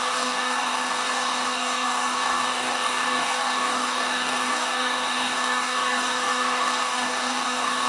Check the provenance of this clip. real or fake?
fake